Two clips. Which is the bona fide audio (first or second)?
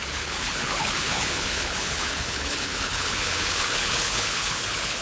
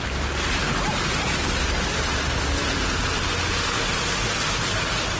second